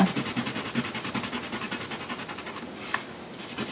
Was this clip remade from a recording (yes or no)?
no